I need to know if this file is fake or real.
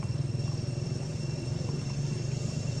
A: fake